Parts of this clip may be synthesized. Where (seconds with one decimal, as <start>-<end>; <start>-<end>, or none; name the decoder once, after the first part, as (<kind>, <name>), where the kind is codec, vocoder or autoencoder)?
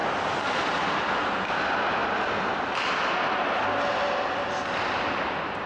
none